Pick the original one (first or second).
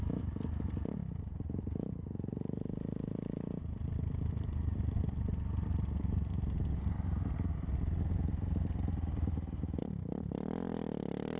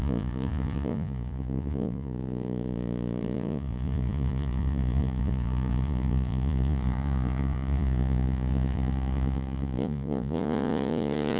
first